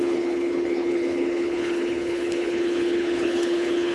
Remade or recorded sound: remade